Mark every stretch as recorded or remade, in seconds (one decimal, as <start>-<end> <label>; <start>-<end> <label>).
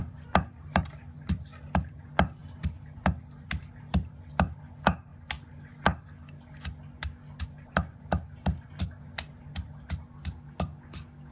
0.0-11.3 recorded